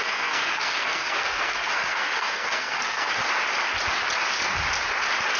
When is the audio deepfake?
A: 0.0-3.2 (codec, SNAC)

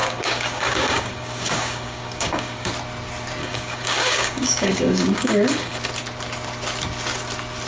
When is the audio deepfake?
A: 0.0-2.7 (codec, DAC); 3.4-5.8

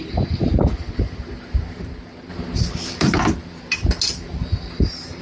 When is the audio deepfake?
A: none

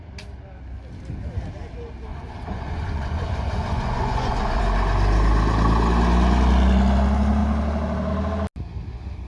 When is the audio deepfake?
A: 2.1-4.6 (vocoder, Vocos)